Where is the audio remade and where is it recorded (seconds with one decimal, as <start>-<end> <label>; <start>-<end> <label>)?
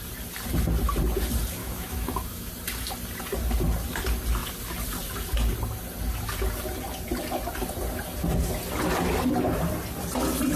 0.0-1.6 recorded; 1.6-2.5 remade; 2.5-10.6 recorded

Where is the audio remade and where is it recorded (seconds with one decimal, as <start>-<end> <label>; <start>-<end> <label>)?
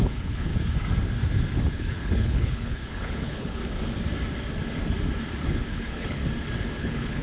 0.0-0.5 remade; 0.5-1.7 recorded; 1.7-3.6 remade; 3.6-5.7 recorded; 5.7-6.2 remade; 6.2-6.8 recorded; 6.8-7.2 remade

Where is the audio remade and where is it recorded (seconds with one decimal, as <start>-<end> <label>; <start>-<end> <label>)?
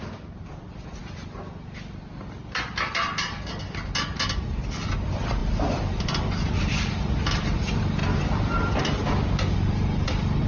0.0-10.5 recorded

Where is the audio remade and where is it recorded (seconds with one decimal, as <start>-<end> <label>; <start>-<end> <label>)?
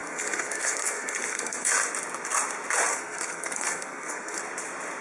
0.0-1.7 remade; 1.7-2.9 recorded; 2.9-4.4 remade; 4.4-5.0 recorded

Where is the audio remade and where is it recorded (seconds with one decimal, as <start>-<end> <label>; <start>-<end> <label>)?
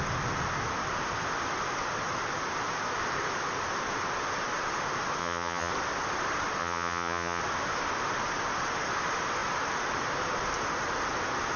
0.0-5.2 recorded; 5.2-5.7 remade; 5.7-6.6 recorded; 6.6-7.4 remade; 7.4-11.6 recorded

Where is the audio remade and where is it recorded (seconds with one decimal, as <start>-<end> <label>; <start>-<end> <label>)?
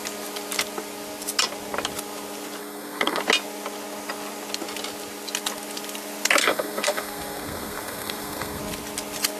0.0-2.6 recorded; 2.6-3.2 remade; 3.2-6.4 recorded; 6.4-8.6 remade; 8.6-9.4 recorded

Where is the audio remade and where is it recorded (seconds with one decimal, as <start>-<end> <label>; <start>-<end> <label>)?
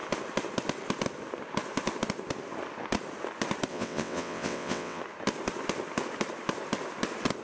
0.0-3.7 recorded; 3.7-5.0 remade; 5.0-7.4 recorded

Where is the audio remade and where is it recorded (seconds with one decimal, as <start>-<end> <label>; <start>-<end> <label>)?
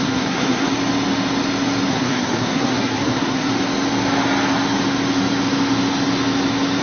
0.0-0.7 remade; 0.7-1.9 recorded; 1.9-3.5 remade; 3.5-6.8 recorded